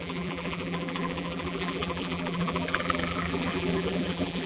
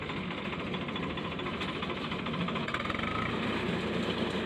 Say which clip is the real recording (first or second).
second